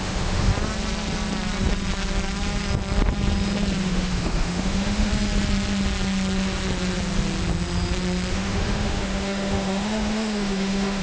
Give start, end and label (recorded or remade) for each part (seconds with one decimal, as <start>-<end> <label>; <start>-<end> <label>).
0.0-0.5 remade; 0.5-3.8 recorded; 3.8-5.1 remade; 5.1-8.3 recorded; 8.3-11.0 remade